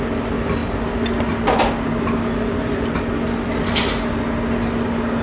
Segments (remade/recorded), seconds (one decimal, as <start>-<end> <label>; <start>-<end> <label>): 0.0-5.2 recorded